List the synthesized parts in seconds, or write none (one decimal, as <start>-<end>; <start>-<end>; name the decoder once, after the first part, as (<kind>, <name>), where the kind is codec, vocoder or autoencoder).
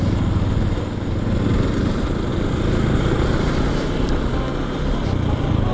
2.3-4.3 (vocoder, BigVGAN v2)